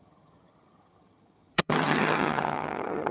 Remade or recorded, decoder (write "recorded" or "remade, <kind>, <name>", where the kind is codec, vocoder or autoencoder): remade, vocoder, HiFi-GAN